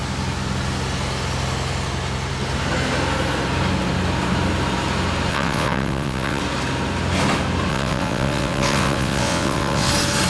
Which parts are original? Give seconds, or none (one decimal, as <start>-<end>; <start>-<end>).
0.0-5.3; 6.4-7.7; 9.9-10.3